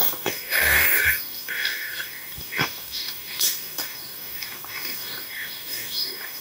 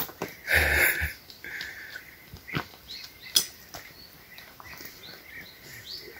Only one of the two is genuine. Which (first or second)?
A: second